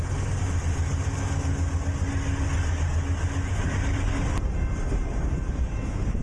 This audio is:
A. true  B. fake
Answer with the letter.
A